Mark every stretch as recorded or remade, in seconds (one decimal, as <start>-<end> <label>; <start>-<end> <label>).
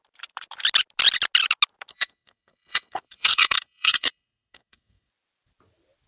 0.0-1.9 recorded; 1.9-5.1 remade; 5.1-6.1 recorded